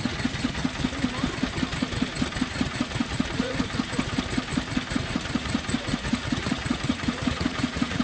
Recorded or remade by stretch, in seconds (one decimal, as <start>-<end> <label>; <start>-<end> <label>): 0.0-0.6 remade; 0.6-2.5 recorded; 2.5-3.5 remade; 3.5-4.9 recorded; 4.9-8.0 remade